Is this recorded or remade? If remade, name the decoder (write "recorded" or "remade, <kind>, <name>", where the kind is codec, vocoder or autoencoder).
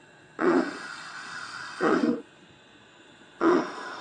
remade, vocoder, Vocos